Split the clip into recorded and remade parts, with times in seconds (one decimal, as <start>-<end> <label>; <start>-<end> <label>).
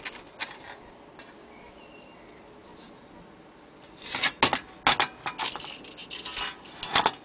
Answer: 0.0-7.2 recorded